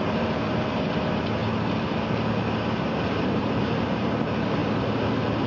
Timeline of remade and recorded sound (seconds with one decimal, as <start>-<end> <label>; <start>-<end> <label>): 0.0-1.4 remade; 1.4-2.4 recorded; 2.4-4.6 remade; 4.6-5.5 recorded